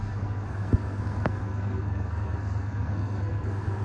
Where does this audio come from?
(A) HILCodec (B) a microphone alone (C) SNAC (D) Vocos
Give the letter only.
C